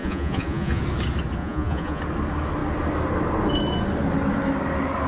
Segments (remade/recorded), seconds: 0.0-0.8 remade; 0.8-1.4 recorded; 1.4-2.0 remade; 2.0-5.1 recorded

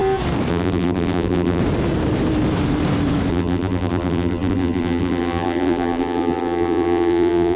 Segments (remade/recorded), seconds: 0.0-0.5 recorded; 0.5-1.6 remade; 1.6-3.3 recorded; 3.3-7.6 remade